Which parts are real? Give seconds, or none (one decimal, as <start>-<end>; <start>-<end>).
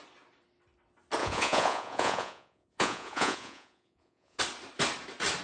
0.0-1.2; 4.4-5.4